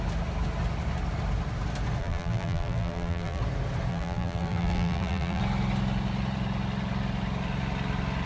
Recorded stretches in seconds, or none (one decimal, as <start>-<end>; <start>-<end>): 0.0-2.0; 3.4-3.9; 5.4-8.3